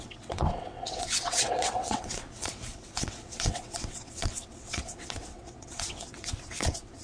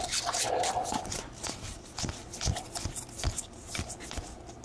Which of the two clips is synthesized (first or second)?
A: first